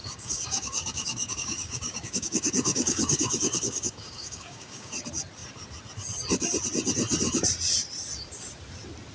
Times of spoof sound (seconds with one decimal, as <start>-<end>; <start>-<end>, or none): 0.0-4.9